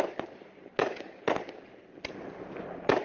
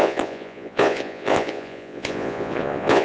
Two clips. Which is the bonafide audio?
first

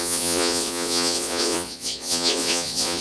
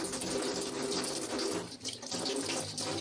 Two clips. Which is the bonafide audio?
second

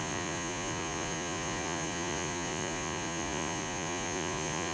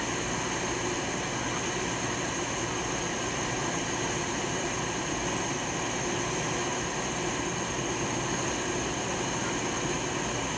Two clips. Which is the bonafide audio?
second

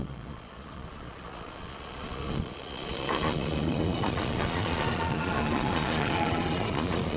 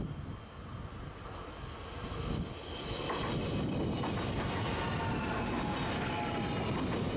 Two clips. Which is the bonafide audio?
second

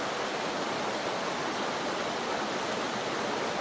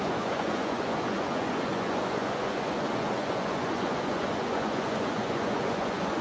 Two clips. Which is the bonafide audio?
first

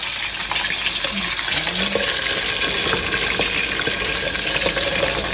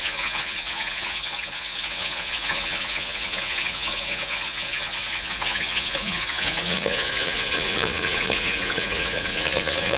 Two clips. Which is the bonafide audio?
first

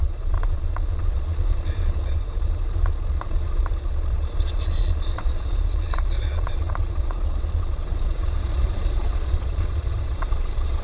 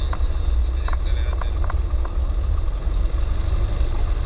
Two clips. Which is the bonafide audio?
second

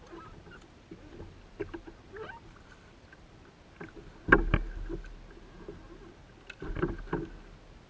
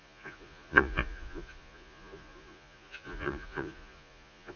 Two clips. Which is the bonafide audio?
first